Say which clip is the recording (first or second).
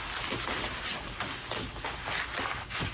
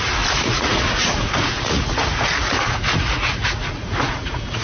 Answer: first